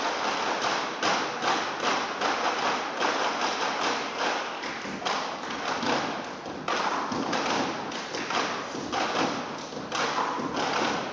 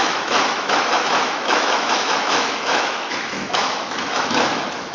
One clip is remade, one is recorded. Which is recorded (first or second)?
first